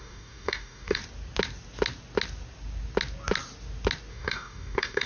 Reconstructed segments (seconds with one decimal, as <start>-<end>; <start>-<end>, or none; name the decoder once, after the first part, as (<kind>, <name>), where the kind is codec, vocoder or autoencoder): 0.0-1.0 (codec, DAC); 4.1-5.1